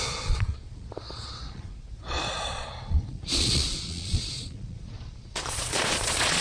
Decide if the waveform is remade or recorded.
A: remade